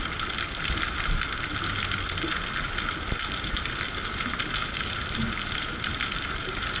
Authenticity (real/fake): real